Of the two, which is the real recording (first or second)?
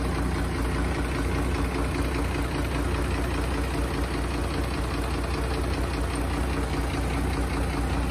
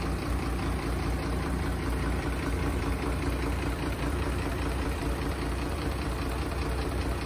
first